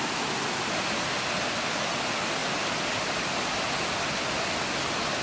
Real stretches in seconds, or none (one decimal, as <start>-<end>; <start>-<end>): 0.0-5.2